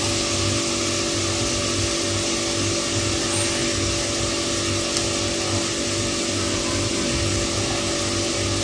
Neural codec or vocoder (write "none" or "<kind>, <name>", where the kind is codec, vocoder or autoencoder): none